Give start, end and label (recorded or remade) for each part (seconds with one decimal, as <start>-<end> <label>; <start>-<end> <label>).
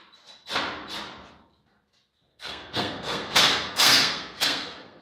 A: 0.0-2.3 recorded; 2.3-5.0 remade